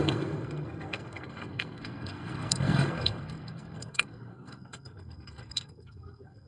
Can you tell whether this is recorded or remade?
remade